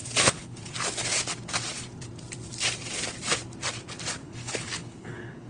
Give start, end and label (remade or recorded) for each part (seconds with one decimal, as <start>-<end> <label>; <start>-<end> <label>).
0.0-0.6 remade; 0.6-4.2 recorded; 4.2-5.5 remade